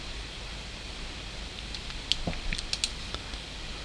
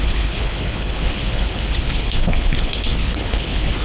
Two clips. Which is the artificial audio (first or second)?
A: second